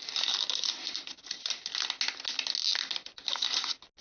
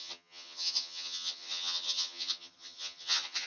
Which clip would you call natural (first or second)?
first